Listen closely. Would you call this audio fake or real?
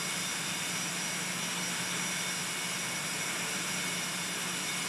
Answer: real